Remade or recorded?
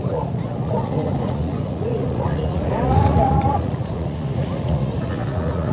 remade